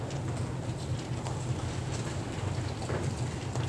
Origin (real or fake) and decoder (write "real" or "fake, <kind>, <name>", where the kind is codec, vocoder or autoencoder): real